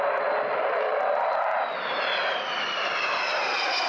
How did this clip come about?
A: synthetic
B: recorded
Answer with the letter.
A